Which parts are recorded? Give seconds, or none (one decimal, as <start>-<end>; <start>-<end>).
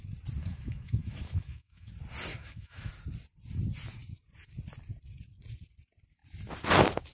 0.0-0.4; 1.9-2.3; 2.9-7.1